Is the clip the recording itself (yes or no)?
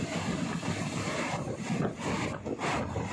yes